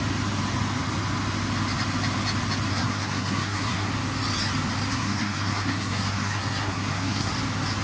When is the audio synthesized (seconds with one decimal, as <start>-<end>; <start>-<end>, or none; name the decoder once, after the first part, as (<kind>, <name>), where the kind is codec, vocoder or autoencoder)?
2.7-3.9 (codec, SNAC); 4.9-7.3